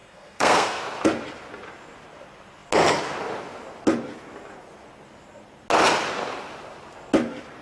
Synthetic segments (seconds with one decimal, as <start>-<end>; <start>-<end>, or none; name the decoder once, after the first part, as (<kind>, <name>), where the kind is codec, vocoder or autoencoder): 0.0-0.8 (codec, SNAC)